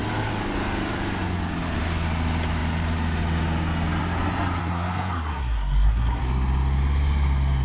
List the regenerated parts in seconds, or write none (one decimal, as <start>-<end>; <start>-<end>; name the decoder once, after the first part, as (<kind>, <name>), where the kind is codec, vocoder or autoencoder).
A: 4.6-6.2 (codec, SNAC)